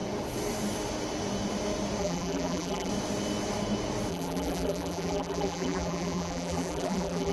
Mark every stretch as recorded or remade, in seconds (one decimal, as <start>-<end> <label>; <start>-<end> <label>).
0.0-2.0 recorded; 2.0-2.9 remade; 2.9-4.1 recorded; 4.1-7.3 remade